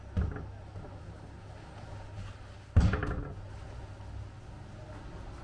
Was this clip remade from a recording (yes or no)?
no